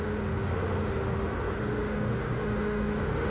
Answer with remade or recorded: remade